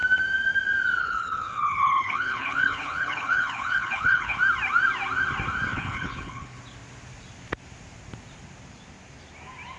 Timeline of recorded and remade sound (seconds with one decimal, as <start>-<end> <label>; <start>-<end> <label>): 0.0-1.0 recorded; 1.0-4.4 remade; 4.4-5.7 recorded; 5.7-6.6 remade; 6.6-9.8 recorded